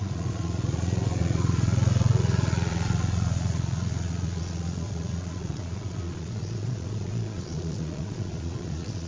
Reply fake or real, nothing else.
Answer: fake